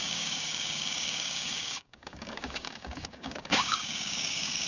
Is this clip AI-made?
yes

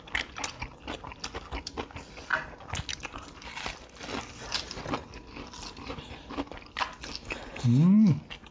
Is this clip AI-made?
no